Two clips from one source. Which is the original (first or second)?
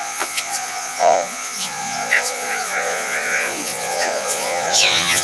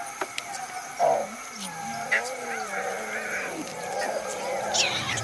second